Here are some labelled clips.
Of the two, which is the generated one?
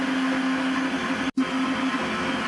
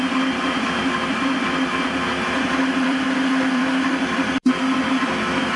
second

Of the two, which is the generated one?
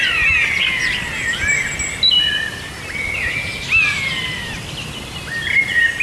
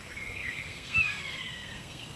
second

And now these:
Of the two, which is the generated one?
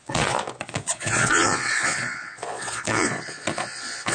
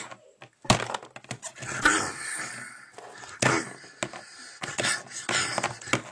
first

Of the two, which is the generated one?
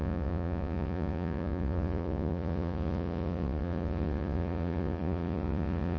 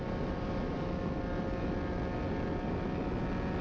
first